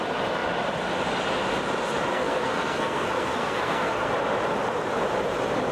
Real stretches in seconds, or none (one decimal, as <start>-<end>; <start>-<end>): 0.0-2.1; 4.1-5.7